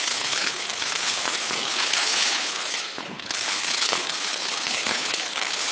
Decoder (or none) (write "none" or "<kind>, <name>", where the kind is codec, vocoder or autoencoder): codec, HILCodec